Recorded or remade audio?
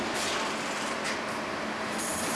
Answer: recorded